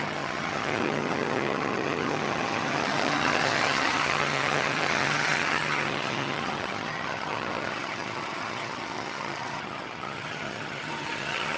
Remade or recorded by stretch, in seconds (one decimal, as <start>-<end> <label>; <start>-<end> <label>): 0.0-11.6 remade